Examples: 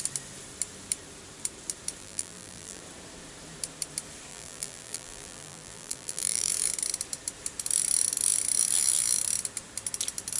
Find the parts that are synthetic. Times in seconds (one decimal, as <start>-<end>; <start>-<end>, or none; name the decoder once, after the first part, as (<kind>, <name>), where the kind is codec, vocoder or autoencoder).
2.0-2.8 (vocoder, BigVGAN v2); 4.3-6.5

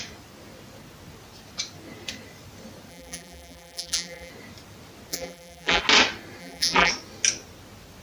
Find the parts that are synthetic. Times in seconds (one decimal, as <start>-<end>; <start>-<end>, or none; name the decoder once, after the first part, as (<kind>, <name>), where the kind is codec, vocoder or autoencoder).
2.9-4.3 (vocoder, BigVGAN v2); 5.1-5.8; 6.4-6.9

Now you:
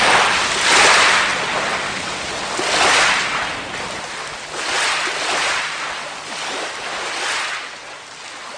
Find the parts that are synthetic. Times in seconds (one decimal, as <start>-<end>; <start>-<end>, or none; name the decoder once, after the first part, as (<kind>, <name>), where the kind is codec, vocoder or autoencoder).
none